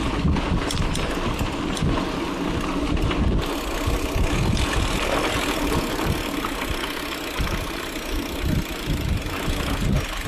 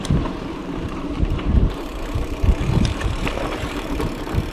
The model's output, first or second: second